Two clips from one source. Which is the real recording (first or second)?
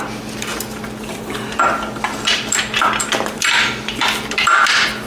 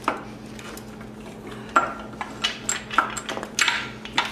second